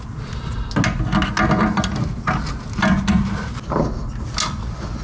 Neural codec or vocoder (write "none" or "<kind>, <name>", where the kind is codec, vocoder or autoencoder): none